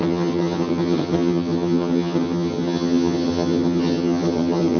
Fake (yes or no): yes